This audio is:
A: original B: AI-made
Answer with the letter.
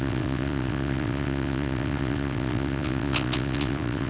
B